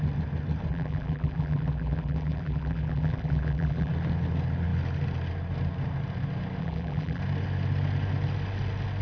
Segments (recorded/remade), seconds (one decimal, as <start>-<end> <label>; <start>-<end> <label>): 0.0-0.7 recorded; 0.7-3.9 remade; 3.9-6.6 recorded; 6.6-7.2 remade; 7.2-9.0 recorded